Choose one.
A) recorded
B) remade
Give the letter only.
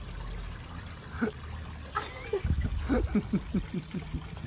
A